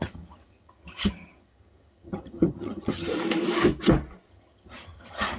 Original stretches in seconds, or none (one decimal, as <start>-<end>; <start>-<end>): 3.1-4.3